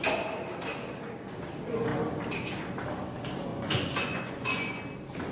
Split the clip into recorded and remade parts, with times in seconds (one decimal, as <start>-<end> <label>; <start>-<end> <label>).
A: 0.0-3.5 recorded; 3.5-4.8 remade; 4.8-5.3 recorded